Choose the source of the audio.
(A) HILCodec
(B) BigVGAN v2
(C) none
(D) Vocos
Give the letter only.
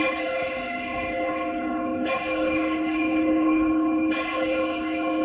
A